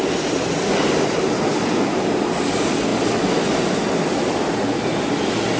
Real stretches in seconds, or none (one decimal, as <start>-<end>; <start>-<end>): 1.5-5.6